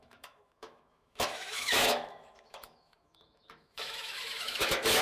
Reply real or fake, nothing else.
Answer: fake